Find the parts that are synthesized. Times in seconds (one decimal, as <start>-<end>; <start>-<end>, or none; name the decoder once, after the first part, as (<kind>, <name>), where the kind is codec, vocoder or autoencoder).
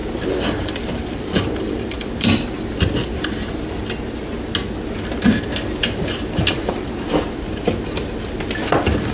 0.0-3.7 (vocoder, BigVGAN v2)